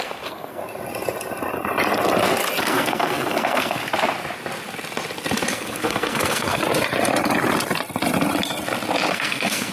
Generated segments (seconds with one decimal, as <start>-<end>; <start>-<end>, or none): 0.0-0.6; 2.6-3.8; 5.5-6.6; 9.1-9.7